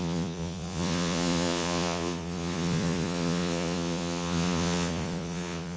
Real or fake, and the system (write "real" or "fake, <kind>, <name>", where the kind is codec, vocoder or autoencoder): fake, vocoder, Vocos